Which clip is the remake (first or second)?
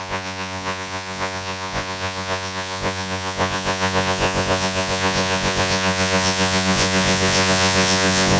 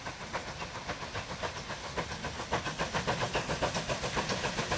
first